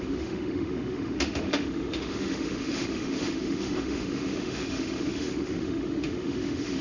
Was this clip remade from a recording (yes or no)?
yes